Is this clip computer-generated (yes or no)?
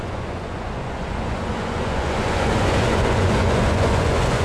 yes